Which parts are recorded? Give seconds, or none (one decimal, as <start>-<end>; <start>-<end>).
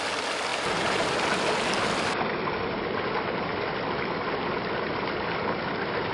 0.0-6.1